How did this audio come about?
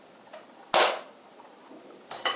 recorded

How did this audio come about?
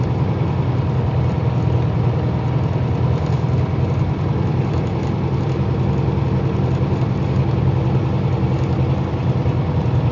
recorded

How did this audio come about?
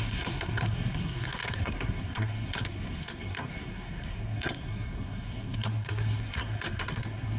remade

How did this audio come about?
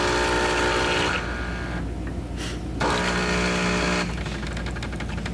recorded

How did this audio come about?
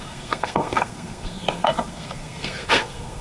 remade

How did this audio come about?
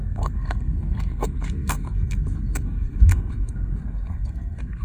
remade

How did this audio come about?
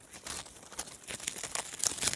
recorded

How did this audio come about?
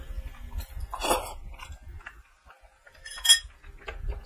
recorded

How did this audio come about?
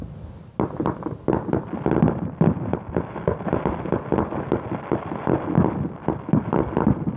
recorded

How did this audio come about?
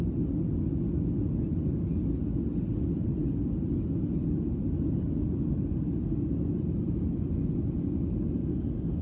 recorded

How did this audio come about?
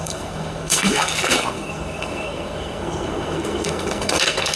remade